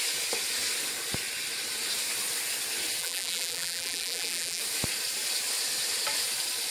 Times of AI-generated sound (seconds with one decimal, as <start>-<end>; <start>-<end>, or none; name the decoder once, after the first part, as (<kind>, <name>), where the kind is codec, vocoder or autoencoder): 3.0-4.6 (vocoder, BigVGAN v2)